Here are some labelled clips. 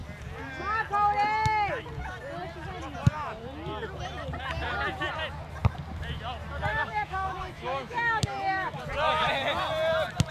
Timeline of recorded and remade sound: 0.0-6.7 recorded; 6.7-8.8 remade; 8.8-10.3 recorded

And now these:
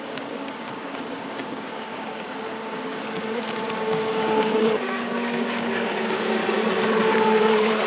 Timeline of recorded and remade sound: 0.0-6.4 remade; 6.4-7.4 recorded; 7.4-7.9 remade

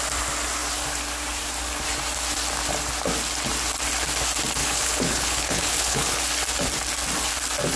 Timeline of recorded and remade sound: 0.0-4.6 recorded; 4.6-6.2 remade; 6.2-7.8 recorded

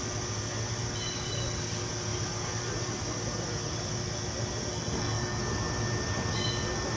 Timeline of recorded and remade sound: 0.0-4.7 recorded; 4.7-5.4 remade; 5.4-7.0 recorded

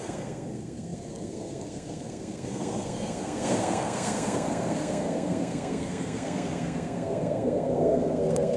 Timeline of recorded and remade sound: 0.0-8.6 remade

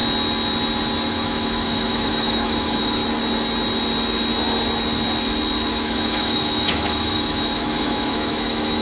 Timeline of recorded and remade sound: 0.0-1.1 recorded; 1.1-3.0 remade; 3.0-5.7 recorded; 5.7-8.8 remade